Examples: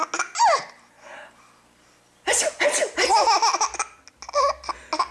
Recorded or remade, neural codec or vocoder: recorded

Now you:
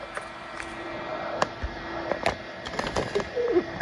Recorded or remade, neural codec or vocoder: recorded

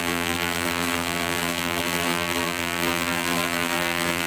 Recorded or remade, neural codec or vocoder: remade, vocoder, BigVGAN v2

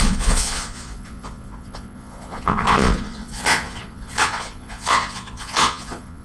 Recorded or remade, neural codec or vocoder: remade, vocoder, Vocos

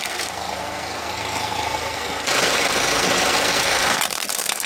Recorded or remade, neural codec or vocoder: remade, codec, SNAC